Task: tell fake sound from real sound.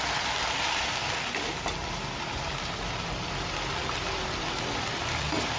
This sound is fake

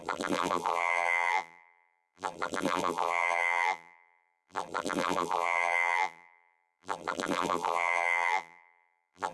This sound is fake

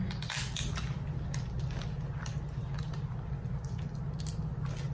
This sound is real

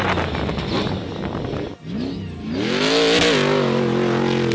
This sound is real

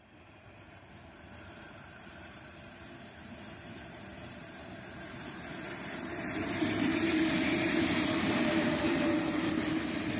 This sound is fake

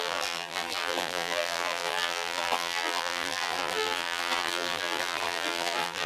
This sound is fake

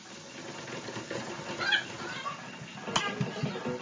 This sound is real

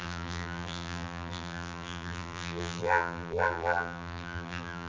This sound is fake